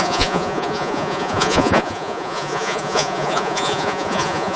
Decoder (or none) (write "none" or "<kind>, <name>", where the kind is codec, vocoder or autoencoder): vocoder, Vocos